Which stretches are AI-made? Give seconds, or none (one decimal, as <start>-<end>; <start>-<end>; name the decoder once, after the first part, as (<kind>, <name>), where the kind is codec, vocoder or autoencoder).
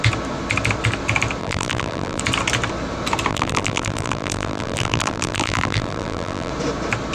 1.4-2.2 (vocoder, BigVGAN v2); 3.3-6.5